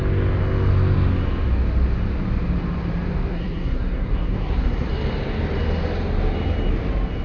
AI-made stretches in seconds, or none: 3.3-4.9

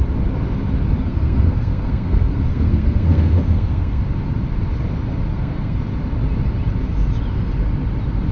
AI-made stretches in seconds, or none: 1.0-4.0; 5.3-5.8

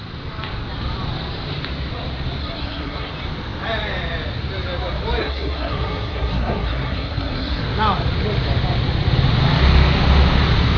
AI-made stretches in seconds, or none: 2.4-3.1; 5.2-7.6

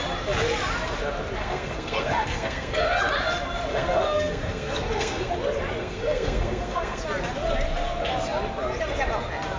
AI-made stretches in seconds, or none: 1.4-3.0; 3.7-5.3; 5.8-7.0

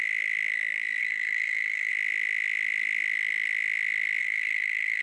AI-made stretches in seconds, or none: 1.0-1.9; 4.2-5.0